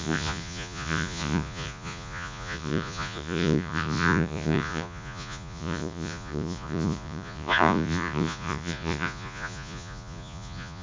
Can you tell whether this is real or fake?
fake